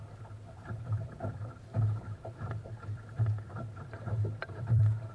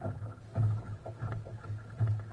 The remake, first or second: first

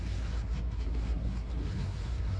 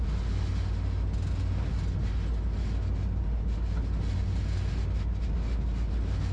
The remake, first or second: first